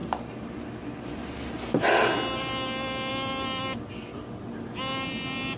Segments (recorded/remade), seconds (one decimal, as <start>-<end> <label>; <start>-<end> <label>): 0.0-5.6 recorded